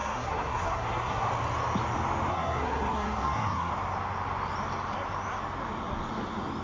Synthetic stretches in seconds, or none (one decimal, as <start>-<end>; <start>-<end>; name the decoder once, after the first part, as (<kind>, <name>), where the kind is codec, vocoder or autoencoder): 0.0-1.3 (codec, SNAC); 2.3-3.7